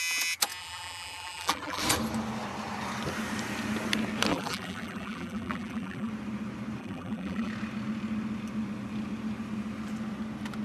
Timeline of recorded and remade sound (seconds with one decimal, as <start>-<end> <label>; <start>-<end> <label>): 0.0-0.6 recorded; 0.6-1.8 remade; 1.8-4.3 recorded; 4.3-6.1 remade; 6.1-6.8 recorded; 6.8-7.5 remade; 7.5-10.6 recorded